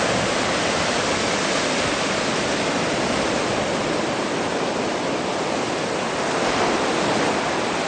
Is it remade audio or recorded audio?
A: recorded